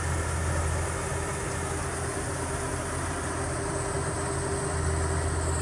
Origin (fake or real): real